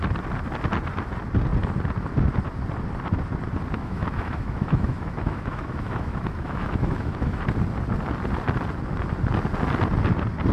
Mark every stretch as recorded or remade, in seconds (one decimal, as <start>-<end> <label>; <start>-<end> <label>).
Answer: 0.0-3.8 recorded; 3.8-7.4 remade; 7.4-10.5 recorded